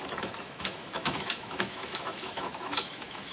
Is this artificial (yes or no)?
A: yes